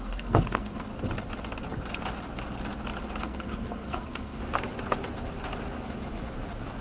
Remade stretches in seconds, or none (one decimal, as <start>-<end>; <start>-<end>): 0.0-0.9; 3.2-4.4